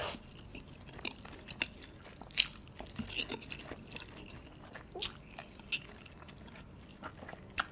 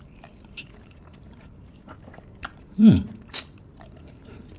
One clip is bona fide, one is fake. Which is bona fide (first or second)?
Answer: first